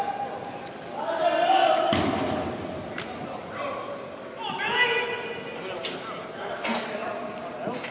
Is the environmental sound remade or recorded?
recorded